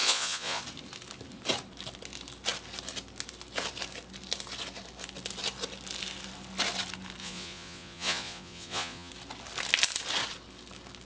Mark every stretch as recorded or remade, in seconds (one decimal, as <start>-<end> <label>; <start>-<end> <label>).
0.0-0.6 remade; 0.6-7.2 recorded; 7.2-9.1 remade; 9.1-11.1 recorded